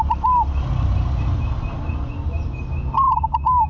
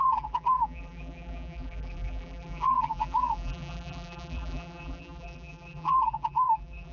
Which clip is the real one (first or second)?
first